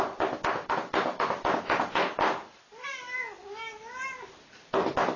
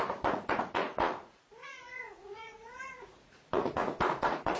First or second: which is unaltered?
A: first